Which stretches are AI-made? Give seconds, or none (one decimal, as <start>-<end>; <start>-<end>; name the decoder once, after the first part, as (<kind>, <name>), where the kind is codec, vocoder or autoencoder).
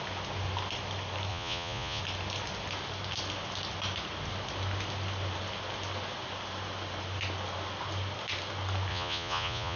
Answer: 1.3-2.0 (vocoder, Vocos); 8.9-9.8